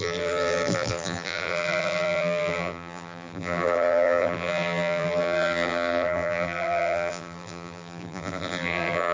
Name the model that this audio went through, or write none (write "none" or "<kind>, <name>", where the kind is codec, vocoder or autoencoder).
vocoder, BigVGAN v2